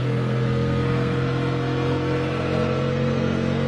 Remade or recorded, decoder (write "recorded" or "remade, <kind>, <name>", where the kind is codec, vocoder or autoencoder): remade, codec, SNAC